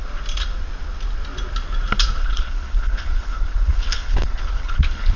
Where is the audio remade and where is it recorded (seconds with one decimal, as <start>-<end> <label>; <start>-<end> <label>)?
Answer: 0.0-2.2 recorded; 2.2-5.2 remade